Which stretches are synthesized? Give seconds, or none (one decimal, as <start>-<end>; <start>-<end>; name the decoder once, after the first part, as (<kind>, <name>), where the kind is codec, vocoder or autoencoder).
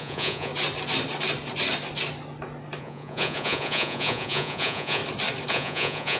0.0-0.5 (vocoder, Vocos); 2.8-5.0; 5.5-6.2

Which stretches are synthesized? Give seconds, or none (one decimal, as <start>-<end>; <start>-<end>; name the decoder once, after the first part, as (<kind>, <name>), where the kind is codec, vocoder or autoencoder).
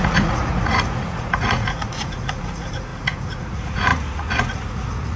0.0-5.2 (vocoder, Vocos)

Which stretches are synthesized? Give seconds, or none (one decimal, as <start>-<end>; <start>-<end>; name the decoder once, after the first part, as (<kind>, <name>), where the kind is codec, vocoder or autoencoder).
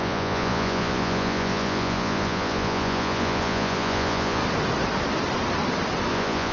0.0-4.4 (vocoder, Vocos); 6.1-6.5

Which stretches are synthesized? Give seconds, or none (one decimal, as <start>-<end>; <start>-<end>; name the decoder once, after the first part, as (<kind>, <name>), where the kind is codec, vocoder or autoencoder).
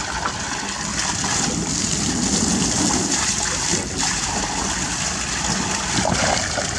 none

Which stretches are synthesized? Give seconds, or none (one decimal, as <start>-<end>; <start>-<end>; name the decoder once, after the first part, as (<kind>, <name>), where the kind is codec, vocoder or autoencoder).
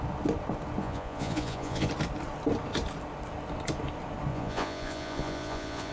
0.8-1.9 (vocoder, Vocos); 4.3-5.9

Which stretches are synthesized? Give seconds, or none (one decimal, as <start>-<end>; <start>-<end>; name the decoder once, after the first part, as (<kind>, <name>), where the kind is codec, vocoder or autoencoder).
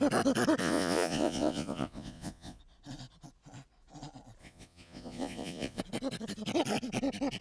0.6-2.6 (vocoder, Vocos); 4.4-5.8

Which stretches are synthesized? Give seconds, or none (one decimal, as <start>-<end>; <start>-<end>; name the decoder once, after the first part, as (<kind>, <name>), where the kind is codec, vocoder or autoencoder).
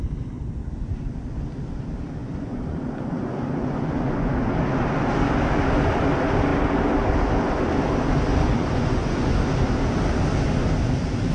2.2-4.3 (vocoder, Vocos); 8.3-9.3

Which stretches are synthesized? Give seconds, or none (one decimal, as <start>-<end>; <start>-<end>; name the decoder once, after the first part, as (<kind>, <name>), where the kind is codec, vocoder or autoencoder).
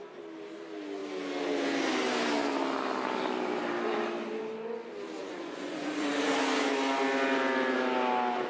5.2-6.1 (vocoder, Vocos)